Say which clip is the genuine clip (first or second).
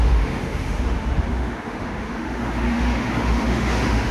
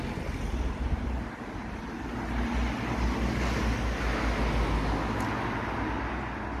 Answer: second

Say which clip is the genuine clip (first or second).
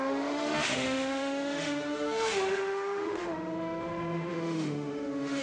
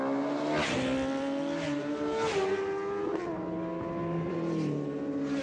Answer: second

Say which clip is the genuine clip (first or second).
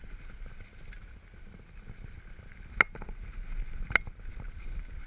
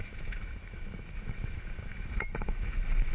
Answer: first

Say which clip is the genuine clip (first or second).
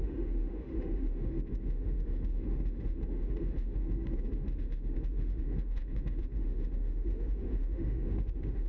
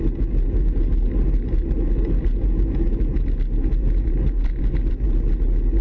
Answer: second